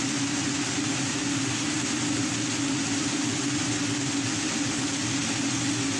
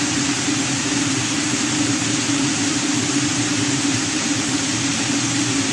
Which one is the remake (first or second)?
second